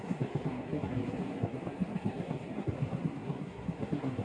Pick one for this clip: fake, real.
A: fake